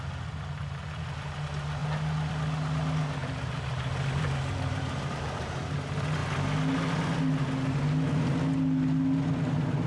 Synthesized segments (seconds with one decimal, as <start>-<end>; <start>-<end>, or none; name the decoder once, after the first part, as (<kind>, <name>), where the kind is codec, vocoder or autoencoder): 3.2-5.8 (vocoder, BigVGAN v2)